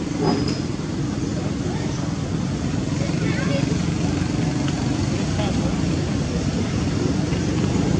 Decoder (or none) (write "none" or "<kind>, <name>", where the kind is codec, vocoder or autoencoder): none